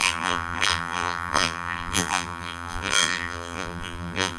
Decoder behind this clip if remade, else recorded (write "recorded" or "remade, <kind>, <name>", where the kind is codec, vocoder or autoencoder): remade, vocoder, BigVGAN v2